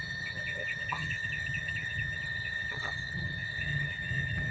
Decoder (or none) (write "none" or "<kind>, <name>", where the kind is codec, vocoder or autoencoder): vocoder, HiFi-GAN